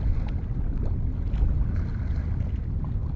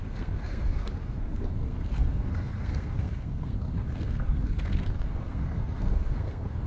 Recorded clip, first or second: first